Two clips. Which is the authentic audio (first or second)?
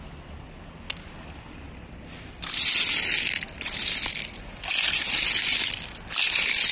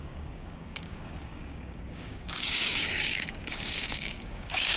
first